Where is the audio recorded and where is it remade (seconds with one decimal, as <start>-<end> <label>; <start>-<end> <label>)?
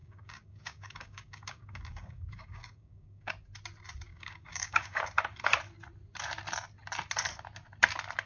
0.0-3.3 remade; 3.3-4.1 recorded; 4.1-5.0 remade; 5.0-8.3 recorded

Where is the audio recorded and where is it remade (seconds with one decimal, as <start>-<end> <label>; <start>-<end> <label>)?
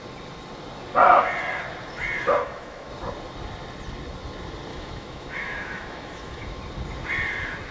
0.0-2.4 recorded; 2.4-2.9 remade; 2.9-4.7 recorded; 4.7-6.6 remade; 6.6-7.7 recorded